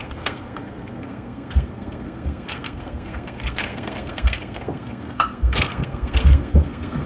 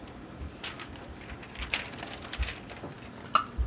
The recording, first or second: second